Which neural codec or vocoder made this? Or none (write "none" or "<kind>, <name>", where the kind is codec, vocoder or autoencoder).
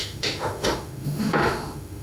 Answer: autoencoder, DAC-VAE